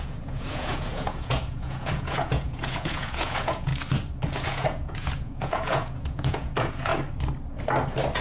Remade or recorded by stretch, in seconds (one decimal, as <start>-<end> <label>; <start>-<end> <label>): 0.0-3.7 remade; 3.7-4.3 recorded; 4.3-6.9 remade; 6.9-8.2 recorded